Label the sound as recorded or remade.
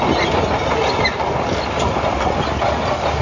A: recorded